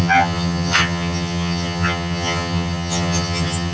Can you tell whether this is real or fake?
fake